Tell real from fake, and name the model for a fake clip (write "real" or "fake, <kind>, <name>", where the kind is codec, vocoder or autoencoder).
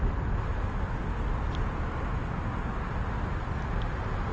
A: real